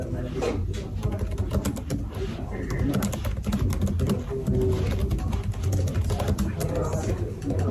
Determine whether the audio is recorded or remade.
recorded